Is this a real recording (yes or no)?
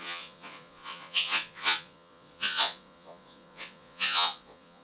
no